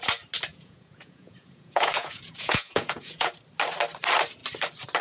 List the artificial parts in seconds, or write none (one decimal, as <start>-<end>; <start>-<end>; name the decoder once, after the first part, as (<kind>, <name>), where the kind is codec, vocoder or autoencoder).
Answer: 0.5-3.3 (vocoder, Vocos)